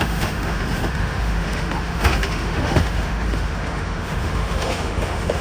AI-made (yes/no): yes